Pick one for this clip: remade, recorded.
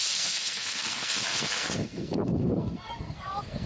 remade